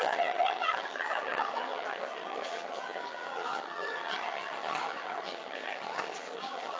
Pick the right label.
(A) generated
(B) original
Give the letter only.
A